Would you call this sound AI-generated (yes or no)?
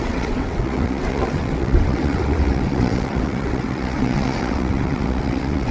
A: yes